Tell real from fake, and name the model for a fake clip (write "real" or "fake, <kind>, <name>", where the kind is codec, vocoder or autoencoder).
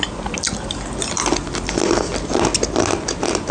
real